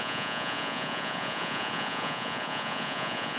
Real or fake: fake